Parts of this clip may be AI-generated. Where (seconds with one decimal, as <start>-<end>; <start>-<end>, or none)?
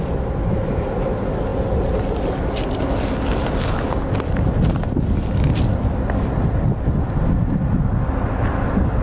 none